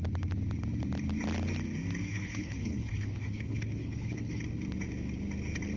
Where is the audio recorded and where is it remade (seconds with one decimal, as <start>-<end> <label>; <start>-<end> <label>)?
0.0-2.1 recorded; 2.1-4.4 remade; 4.4-5.8 recorded